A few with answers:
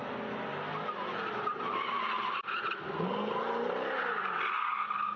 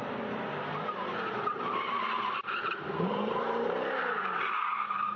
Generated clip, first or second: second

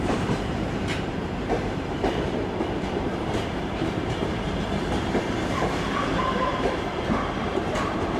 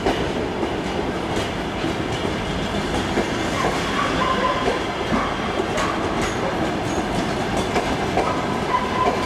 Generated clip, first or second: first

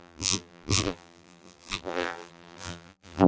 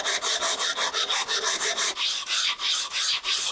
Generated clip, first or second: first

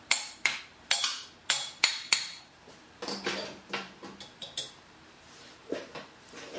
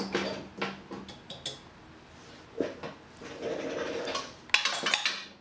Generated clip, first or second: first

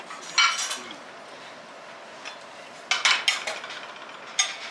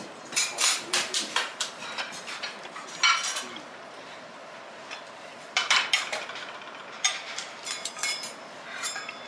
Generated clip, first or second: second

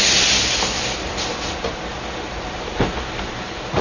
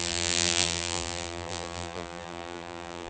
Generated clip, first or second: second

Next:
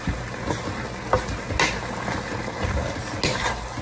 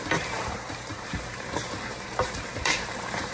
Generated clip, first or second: second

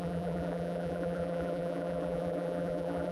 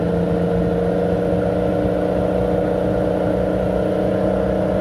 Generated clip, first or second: first